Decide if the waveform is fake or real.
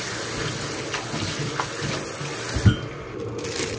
real